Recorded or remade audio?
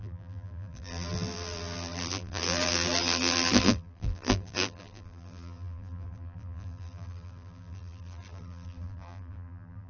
remade